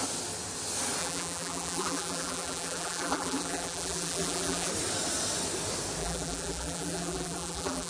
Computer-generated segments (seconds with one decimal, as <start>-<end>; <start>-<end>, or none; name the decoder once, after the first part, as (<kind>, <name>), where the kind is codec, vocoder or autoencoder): 1.0-4.7 (vocoder, BigVGAN v2); 6.0-7.9